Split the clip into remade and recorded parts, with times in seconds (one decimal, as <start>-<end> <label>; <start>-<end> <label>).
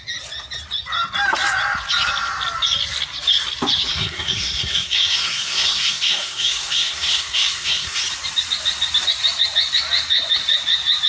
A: 0.0-3.9 recorded; 3.9-8.0 remade; 8.0-11.1 recorded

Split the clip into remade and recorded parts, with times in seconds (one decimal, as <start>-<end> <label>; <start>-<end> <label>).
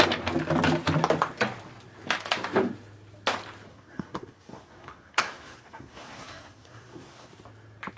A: 0.0-3.7 recorded; 3.7-7.3 remade; 7.3-8.0 recorded